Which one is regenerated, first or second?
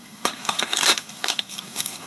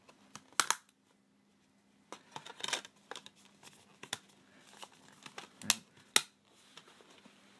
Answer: first